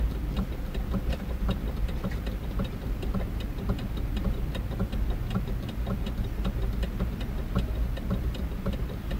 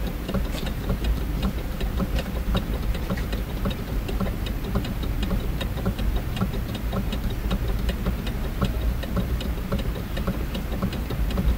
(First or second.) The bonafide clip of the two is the first